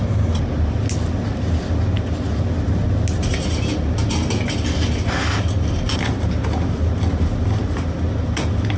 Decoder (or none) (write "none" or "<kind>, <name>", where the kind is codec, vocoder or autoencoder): none